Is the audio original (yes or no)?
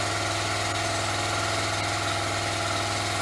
yes